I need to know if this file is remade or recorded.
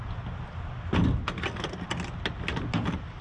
recorded